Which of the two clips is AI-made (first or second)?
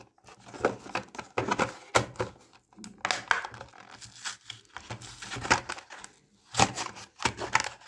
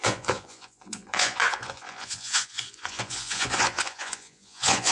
second